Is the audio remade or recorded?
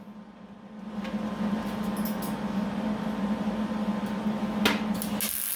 recorded